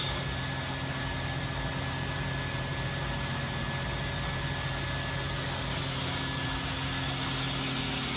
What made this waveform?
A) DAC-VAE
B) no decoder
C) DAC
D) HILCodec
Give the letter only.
B